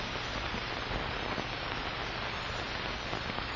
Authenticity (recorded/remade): recorded